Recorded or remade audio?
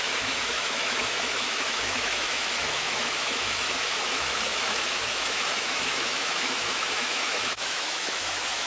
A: remade